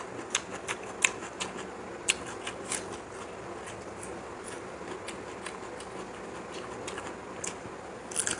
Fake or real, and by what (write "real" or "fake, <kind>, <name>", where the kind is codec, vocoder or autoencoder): real